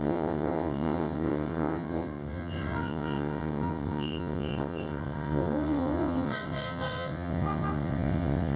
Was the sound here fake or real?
fake